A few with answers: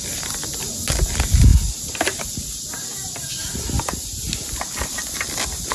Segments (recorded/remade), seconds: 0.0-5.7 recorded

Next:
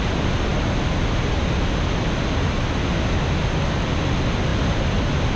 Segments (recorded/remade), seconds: 0.0-5.4 recorded

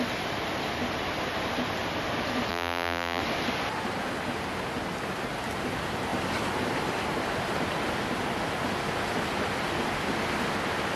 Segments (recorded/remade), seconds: 0.0-2.5 recorded; 2.5-3.2 remade; 3.2-11.0 recorded

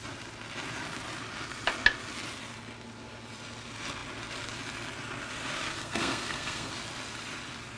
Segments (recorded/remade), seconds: 0.0-5.8 recorded; 5.8-6.7 remade; 6.7-7.8 recorded

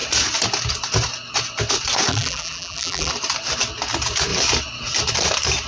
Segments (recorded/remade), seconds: 0.0-2.1 recorded; 2.1-3.1 remade; 3.1-5.7 recorded

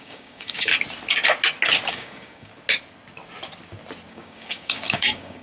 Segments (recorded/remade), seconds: 0.0-0.7 remade; 0.7-1.9 recorded; 1.9-2.5 remade; 2.5-4.1 recorded; 4.1-5.4 remade

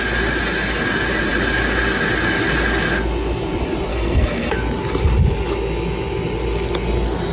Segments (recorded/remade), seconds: 0.0-3.9 recorded; 3.9-4.5 remade; 4.5-7.3 recorded